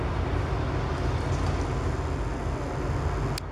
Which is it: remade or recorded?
recorded